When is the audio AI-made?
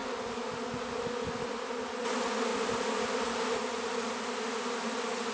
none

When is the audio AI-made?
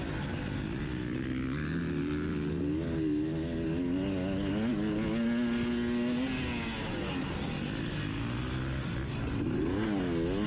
none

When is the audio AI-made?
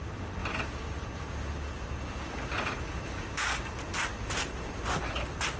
none